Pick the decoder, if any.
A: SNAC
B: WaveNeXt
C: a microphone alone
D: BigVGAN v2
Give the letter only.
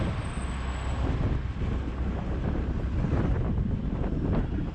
C